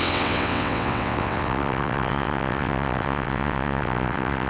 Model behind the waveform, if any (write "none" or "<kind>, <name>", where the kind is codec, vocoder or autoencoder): vocoder, WaveNeXt